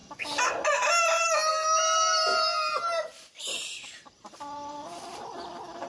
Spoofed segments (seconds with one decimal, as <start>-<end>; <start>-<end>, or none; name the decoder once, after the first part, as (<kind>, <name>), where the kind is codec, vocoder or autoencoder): 1.5-5.0 (vocoder, BigVGAN v2)